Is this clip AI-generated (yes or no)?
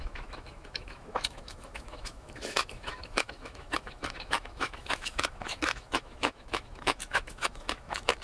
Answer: yes